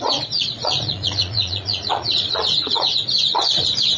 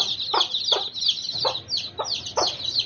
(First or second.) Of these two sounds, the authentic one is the second